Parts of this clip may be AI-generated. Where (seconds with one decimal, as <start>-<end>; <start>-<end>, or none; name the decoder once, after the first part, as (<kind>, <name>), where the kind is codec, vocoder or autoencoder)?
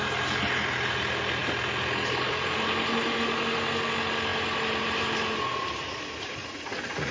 6.4-7.1 (vocoder, Vocos)